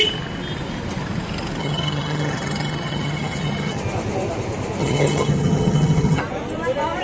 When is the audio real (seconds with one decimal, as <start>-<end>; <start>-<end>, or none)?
0.0-1.6; 3.8-4.8; 6.2-7.0